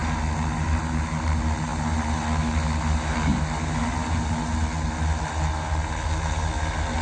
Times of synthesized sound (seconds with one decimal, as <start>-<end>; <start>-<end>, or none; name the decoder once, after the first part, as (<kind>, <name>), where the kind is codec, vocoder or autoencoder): none